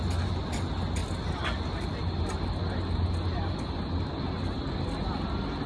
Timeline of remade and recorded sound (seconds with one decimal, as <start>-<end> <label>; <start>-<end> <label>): 0.0-5.7 recorded